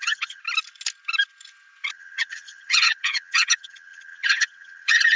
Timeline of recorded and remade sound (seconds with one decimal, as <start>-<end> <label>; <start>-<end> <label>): 0.0-0.4 remade; 0.4-1.9 recorded; 1.9-5.2 remade